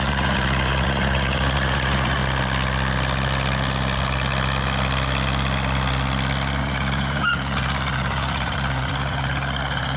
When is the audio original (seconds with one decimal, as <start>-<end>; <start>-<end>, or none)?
2.2-6.6